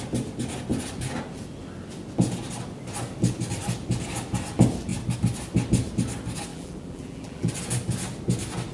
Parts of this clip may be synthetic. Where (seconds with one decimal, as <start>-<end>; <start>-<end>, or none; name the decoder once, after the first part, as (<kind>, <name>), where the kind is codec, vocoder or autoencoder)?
6.5-7.5 (vocoder, BigVGAN v2)